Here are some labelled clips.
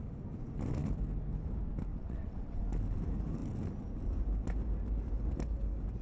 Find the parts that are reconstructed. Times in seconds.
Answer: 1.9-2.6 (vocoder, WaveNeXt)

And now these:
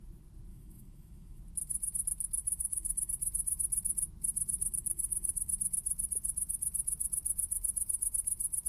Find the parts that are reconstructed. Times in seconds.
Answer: 0.5-1.4 (autoencoder, DAC-VAE); 2.4-3.1; 4.6-5.5

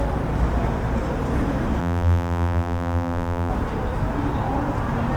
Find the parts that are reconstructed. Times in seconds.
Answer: 1.8-3.5 (vocoder, BigVGAN v2)

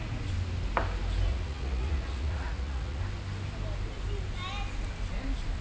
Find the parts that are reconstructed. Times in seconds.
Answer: 1.3-3.0 (vocoder, Vocos)

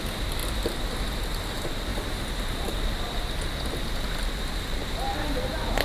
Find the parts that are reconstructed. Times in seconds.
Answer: 1.9-2.6 (vocoder, BigVGAN v2)

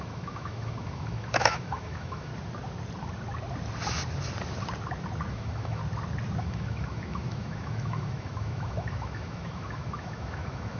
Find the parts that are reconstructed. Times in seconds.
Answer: 0.0-2.3 (autoencoder, DAC-VAE); 5.3-5.8; 6.4-10.8

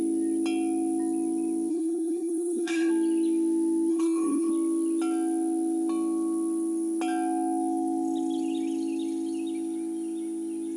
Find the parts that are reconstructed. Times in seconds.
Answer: 1.7-2.9 (codec, SNAC); 3.9-4.5

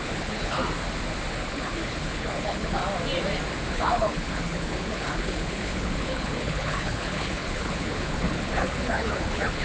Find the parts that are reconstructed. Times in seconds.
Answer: 0.0-0.6 (codec, HILCodec); 1.3-2.8; 3.7-9.6